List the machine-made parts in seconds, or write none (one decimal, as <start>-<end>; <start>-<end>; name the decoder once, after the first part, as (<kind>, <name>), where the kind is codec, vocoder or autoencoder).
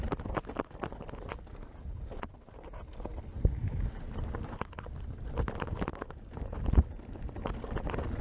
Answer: none